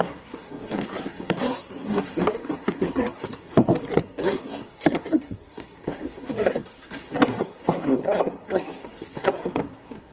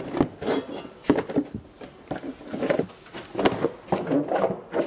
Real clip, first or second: second